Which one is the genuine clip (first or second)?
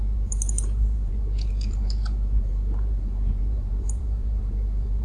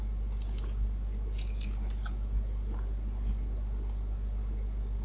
second